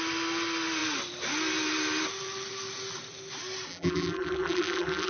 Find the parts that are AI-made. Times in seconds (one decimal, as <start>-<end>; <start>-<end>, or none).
3.7-5.1